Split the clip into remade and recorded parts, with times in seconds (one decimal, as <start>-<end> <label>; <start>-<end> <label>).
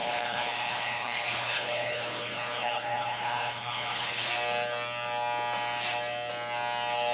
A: 0.0-4.3 remade; 4.3-7.1 recorded